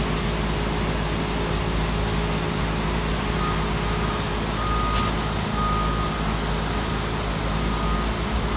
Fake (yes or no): no